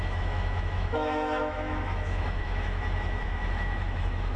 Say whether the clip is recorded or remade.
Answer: remade